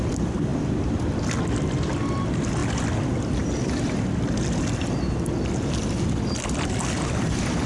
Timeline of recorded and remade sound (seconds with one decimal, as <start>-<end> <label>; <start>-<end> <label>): 0.0-7.7 recorded